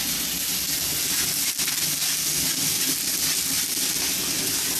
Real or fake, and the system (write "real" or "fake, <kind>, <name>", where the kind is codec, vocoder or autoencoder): real